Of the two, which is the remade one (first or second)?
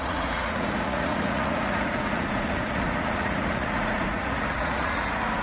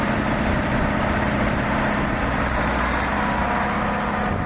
first